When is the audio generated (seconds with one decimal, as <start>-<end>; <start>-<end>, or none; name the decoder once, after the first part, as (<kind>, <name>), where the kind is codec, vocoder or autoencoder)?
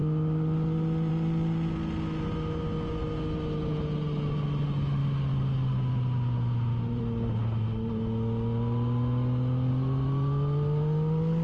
none